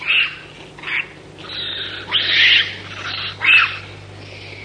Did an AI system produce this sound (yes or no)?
no